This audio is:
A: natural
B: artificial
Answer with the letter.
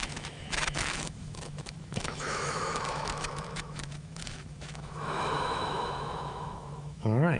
B